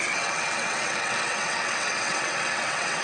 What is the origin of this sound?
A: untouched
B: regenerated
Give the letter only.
B